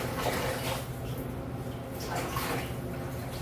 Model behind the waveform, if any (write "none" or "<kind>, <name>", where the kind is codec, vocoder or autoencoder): none